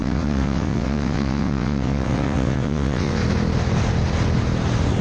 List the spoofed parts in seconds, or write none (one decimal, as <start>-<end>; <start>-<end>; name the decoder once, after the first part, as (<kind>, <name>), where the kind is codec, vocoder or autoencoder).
0.0-3.2 (vocoder, WaveNeXt)